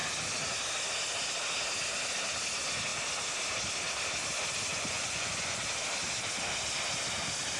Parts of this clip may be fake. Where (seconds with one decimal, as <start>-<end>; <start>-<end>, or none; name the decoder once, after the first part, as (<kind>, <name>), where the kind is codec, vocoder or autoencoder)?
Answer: 4.7-5.6 (vocoder, Vocos)